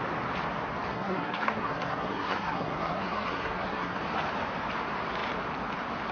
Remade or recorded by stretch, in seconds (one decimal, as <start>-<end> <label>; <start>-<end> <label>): 0.0-0.9 recorded; 0.9-4.0 remade; 4.0-6.1 recorded